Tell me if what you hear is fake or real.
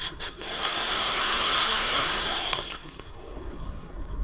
fake